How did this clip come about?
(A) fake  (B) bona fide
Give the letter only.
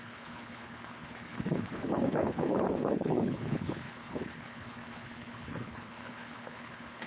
A